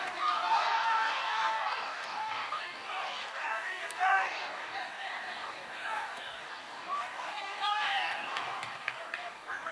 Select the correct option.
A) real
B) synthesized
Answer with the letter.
B